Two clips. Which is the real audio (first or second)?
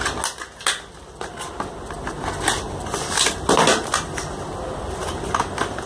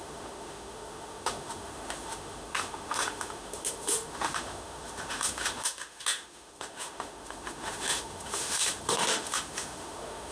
first